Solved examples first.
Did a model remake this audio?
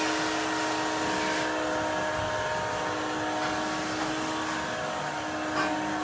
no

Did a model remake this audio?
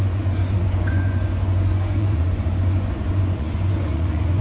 yes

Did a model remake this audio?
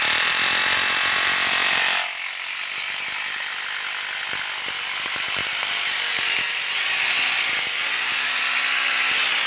no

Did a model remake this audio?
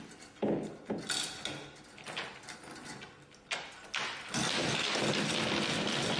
no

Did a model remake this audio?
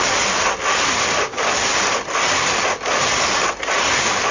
no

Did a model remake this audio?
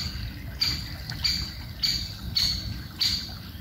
no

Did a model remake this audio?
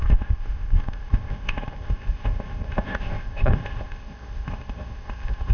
yes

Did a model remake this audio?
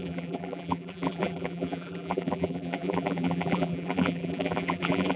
yes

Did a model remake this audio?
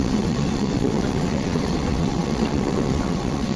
yes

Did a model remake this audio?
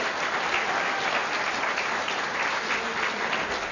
no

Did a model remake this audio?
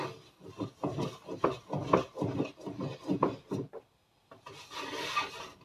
no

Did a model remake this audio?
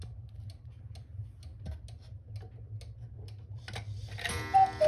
no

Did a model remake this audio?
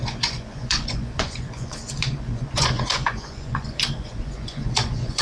yes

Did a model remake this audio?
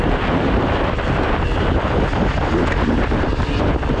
no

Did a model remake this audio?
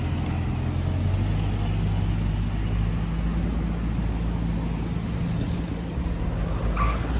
no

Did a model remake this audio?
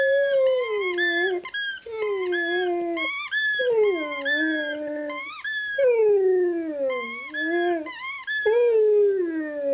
no